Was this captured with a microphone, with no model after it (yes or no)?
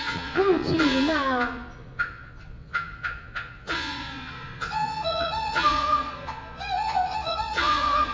no